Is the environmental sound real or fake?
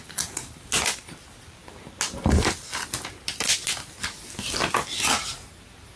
real